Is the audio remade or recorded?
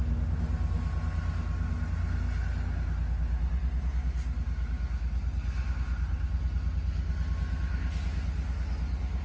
recorded